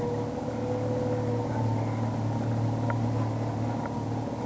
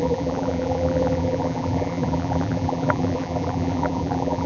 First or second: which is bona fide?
first